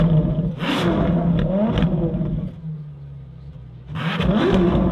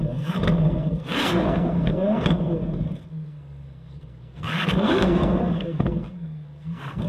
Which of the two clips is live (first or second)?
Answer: first